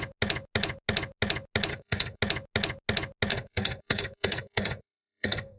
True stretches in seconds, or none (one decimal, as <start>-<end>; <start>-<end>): 0.0-1.7; 2.2-3.3

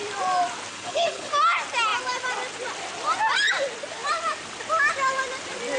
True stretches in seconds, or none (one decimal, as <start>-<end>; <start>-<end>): 0.0-0.7; 1.3-5.8

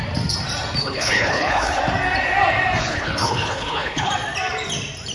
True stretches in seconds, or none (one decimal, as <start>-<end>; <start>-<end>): 0.0-0.8; 1.8-2.8; 4.1-5.1

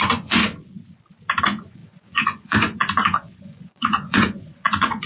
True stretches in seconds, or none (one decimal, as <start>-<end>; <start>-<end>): 0.4-1.4

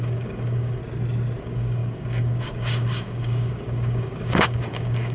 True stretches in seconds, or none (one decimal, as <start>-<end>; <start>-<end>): 0.8-1.4

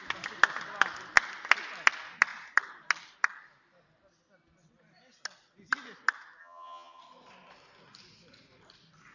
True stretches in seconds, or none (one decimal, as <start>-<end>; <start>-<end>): 0.0-6.4; 7.0-9.1